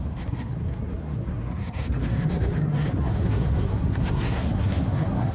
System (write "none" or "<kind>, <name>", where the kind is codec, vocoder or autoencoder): codec, SNAC